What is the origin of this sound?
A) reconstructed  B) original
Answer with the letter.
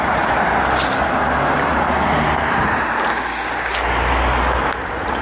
B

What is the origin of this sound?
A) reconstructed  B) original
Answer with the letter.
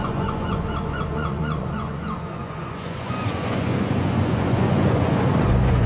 A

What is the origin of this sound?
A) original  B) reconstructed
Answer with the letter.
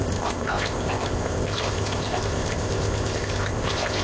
B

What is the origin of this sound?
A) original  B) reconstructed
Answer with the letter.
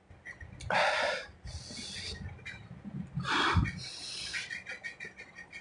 A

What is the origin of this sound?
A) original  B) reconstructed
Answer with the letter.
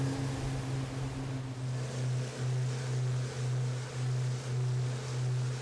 A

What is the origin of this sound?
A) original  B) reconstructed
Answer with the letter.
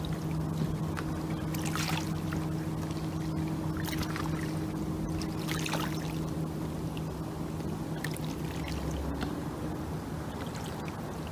A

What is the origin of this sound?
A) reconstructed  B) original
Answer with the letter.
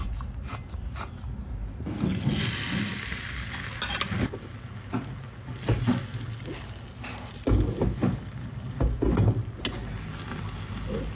B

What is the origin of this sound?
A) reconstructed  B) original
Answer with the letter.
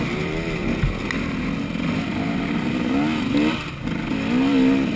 B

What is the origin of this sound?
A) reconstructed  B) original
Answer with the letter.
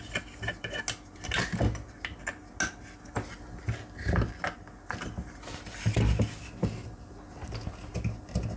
B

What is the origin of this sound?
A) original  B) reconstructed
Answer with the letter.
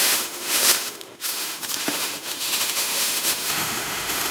B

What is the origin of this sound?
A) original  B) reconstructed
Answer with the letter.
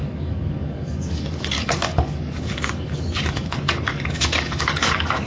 B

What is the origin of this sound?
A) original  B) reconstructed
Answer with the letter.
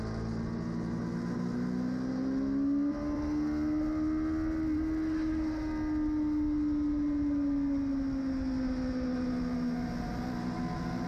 A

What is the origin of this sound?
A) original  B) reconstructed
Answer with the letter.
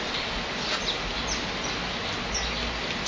A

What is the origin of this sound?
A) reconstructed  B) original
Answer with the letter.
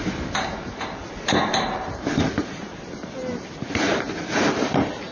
A